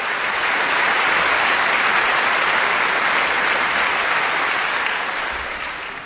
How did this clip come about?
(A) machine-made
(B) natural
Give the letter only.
B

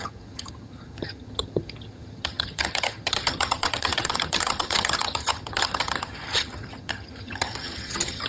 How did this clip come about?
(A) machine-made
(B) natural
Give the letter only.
A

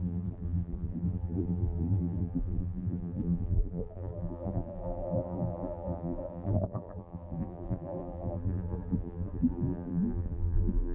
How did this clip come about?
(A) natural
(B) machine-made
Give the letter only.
B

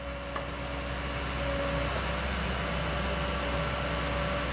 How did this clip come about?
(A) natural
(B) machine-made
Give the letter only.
A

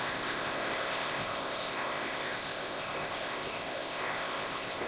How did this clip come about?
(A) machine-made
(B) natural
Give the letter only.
A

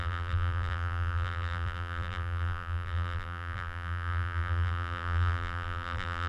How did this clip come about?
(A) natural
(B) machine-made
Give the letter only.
B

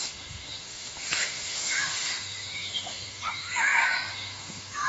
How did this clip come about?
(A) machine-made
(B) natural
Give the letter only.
A